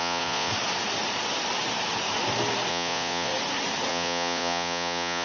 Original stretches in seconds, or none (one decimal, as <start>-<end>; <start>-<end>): 0.5-2.7; 3.3-3.9